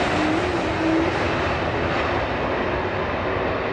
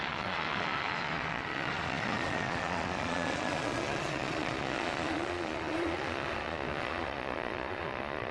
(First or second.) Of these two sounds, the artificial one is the second